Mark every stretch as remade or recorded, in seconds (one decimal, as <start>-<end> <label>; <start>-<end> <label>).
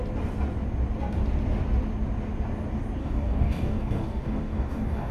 0.0-3.0 recorded; 3.0-5.1 remade